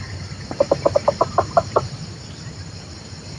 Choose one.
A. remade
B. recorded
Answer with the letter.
B